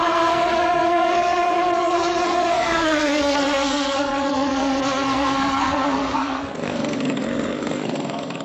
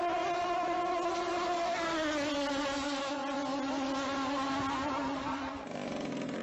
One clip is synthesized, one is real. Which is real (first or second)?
second